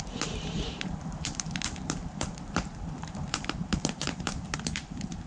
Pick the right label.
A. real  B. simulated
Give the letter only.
B